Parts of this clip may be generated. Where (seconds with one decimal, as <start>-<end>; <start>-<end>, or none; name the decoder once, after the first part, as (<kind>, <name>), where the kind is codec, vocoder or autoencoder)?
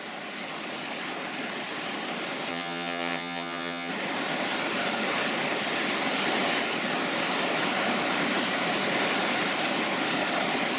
2.5-3.9 (vocoder, HiFi-GAN)